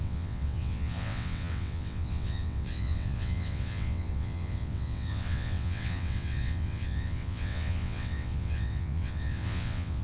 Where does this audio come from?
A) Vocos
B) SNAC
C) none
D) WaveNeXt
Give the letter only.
D